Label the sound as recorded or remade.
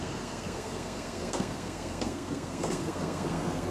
remade